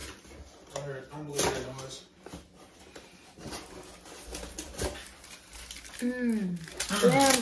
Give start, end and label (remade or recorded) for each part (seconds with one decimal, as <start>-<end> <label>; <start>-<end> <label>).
0.0-7.4 recorded